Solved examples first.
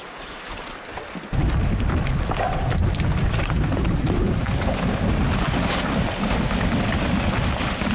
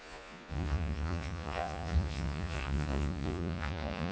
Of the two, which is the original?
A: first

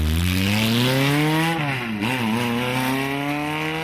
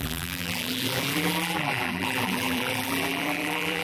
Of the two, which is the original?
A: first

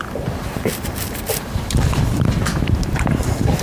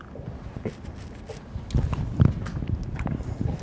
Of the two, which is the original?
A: second